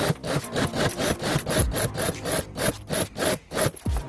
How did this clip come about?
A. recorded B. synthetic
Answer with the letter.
B